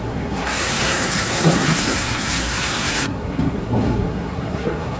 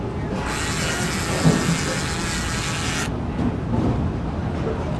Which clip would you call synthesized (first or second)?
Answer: first